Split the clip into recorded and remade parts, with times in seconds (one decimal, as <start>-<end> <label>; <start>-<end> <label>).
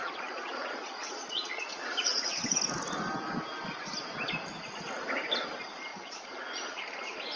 0.0-2.6 remade; 2.6-5.9 recorded; 5.9-6.8 remade; 6.8-7.4 recorded